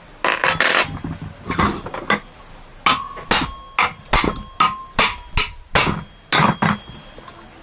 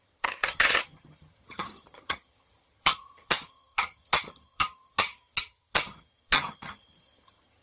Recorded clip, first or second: first